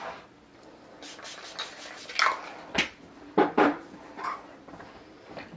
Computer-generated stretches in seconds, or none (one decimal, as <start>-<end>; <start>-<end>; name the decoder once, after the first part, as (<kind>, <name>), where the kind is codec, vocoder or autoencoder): 3.1-4.8 (vocoder, BigVGAN v2)